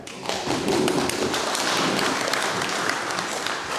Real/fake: fake